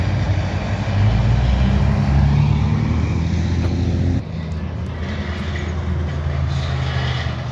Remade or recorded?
recorded